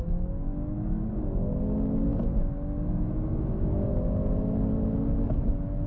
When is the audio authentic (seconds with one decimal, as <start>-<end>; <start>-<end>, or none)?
0.0-5.9